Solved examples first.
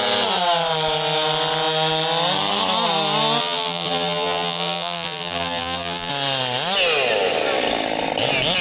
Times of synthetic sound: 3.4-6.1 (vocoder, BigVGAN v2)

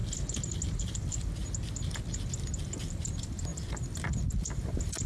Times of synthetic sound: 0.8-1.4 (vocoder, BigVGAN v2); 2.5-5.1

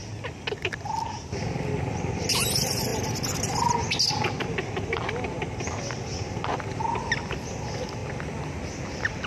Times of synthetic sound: none